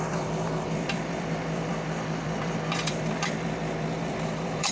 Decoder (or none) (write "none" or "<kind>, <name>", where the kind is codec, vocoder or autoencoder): vocoder, BigVGAN v2